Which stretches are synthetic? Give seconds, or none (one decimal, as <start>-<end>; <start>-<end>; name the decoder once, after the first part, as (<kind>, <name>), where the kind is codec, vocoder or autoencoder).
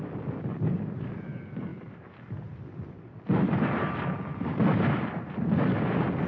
none